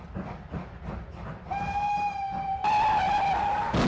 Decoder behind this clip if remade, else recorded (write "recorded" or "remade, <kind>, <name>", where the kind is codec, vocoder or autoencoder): recorded